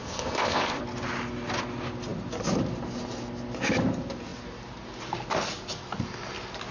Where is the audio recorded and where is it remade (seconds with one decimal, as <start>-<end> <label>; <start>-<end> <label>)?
0.0-0.8 remade; 0.8-6.7 recorded